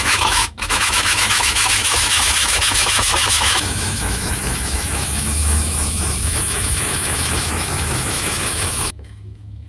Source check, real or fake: fake